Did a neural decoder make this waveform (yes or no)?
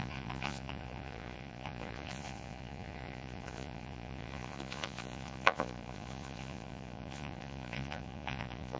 yes